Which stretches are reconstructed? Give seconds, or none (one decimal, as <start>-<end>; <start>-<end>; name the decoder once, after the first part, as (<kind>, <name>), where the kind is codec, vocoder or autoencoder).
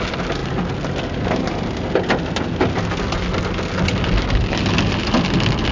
none